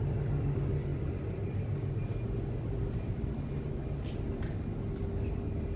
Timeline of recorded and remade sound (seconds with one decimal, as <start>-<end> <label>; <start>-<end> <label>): 0.0-5.8 recorded